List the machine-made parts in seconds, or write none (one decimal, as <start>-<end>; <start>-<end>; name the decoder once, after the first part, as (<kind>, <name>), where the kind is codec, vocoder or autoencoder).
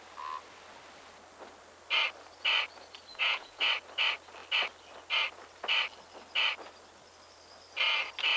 3.1-3.7 (vocoder, Vocos)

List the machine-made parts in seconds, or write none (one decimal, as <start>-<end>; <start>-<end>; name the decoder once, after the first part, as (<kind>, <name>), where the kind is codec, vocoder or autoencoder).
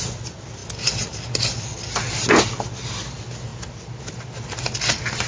none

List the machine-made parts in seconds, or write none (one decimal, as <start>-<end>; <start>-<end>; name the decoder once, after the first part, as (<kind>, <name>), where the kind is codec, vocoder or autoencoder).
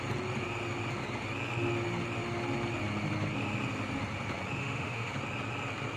4.6-5.1 (autoencoder, DAC-VAE)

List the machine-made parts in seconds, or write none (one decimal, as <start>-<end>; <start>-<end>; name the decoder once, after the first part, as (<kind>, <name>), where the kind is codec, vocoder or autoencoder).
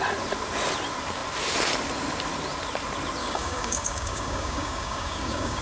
3.2-5.6 (codec, DAC)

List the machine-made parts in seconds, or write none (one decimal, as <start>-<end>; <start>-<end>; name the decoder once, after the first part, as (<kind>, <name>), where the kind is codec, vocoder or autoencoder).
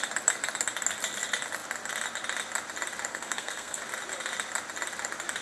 3.1-3.8 (codec, SNAC)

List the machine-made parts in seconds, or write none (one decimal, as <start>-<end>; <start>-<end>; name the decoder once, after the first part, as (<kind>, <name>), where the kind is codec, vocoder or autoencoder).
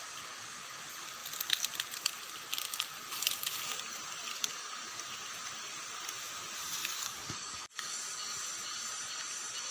4.3-5.0 (codec, DAC); 6.8-8.0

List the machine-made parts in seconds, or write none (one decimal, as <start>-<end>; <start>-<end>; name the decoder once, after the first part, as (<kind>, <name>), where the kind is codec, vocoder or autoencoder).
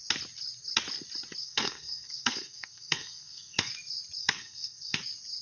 1.4-3.7 (codec, SNAC); 4.2-5.0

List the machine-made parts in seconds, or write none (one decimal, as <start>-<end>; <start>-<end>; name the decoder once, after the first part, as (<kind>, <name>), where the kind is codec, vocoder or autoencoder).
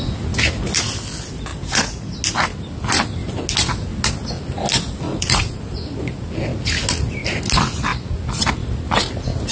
1.5-2.2 (vocoder, Vocos); 5.1-5.6